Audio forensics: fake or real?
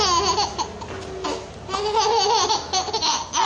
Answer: real